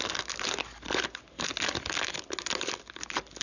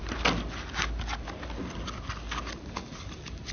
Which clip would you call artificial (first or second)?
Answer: second